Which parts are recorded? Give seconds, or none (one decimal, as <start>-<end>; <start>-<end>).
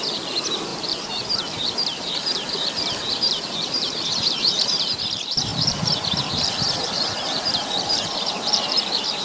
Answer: none